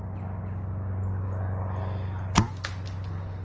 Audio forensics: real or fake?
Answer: real